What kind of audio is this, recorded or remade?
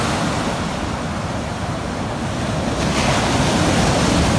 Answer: recorded